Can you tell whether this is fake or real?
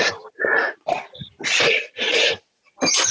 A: real